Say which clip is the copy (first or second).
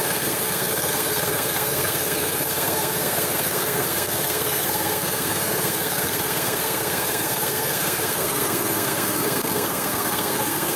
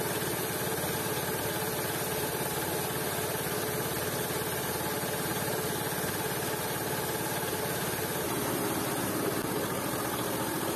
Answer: first